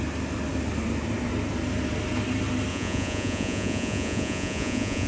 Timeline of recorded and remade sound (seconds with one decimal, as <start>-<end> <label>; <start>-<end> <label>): 0.0-2.7 recorded; 2.7-5.1 remade